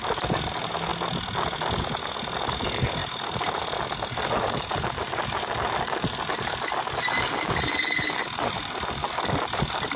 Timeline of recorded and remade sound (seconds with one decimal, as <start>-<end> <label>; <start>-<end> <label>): 0.0-3.0 recorded; 3.0-3.6 remade; 3.6-10.0 recorded